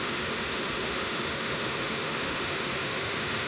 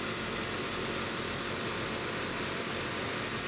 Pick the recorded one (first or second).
second